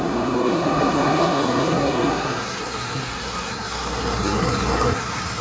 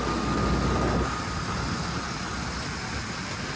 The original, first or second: second